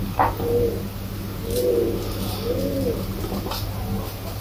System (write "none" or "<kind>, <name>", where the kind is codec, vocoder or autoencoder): none